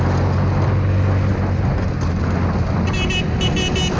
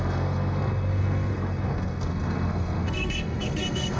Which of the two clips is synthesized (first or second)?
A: second